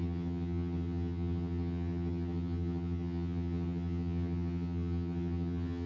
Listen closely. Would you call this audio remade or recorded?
remade